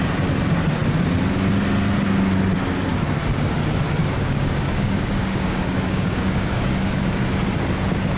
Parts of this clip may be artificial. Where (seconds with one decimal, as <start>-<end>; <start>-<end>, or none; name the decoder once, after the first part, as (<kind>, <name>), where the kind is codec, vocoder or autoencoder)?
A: 4.0-7.2 (codec, DAC)